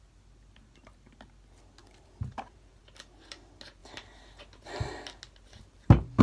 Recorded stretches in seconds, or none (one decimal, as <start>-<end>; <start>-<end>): 0.0-1.8; 2.8-6.2